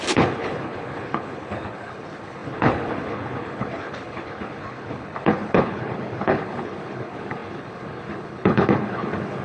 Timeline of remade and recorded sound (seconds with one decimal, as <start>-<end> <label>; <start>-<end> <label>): 0.0-9.4 remade